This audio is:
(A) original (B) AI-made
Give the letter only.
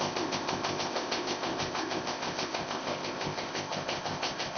B